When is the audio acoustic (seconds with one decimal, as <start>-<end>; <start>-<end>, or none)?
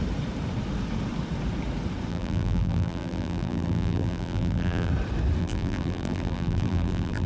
0.0-2.1; 4.9-5.4